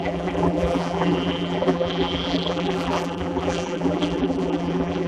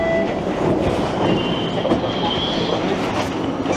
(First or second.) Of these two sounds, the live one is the second